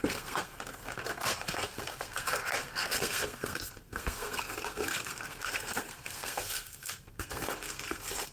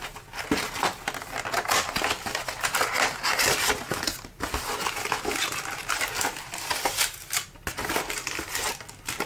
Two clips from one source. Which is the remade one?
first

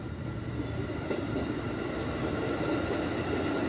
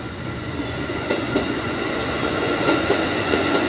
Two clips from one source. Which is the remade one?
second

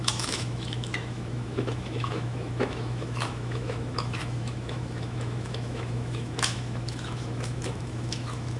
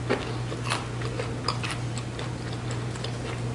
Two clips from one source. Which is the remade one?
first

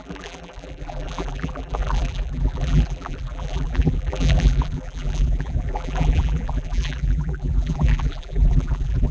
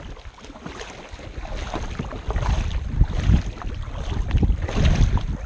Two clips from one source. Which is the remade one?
first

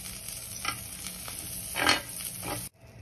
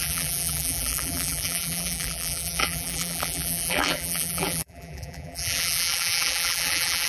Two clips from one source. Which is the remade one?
second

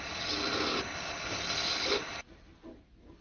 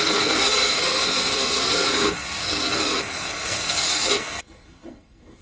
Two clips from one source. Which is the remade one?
second